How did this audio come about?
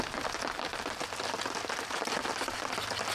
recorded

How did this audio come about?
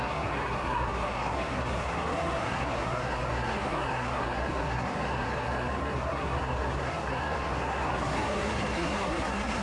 remade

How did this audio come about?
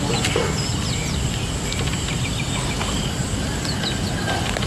recorded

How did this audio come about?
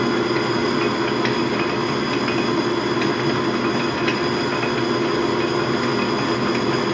recorded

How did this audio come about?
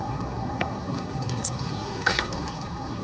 remade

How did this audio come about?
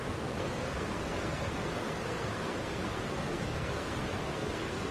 remade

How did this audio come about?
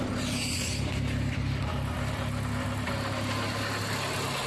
recorded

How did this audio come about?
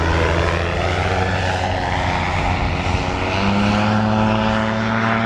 recorded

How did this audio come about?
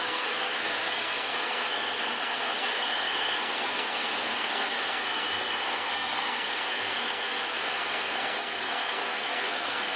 remade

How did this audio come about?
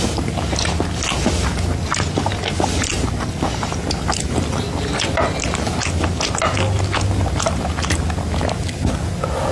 recorded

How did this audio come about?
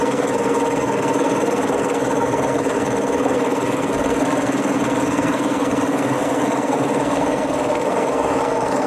remade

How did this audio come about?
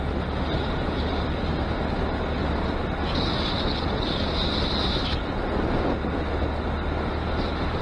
recorded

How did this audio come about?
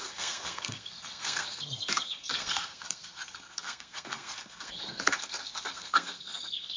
remade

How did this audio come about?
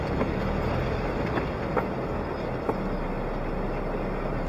recorded